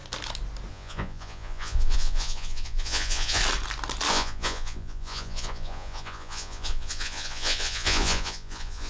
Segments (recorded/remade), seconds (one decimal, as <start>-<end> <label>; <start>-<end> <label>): 0.0-0.7 recorded; 0.7-3.4 remade; 3.4-4.1 recorded; 4.1-8.9 remade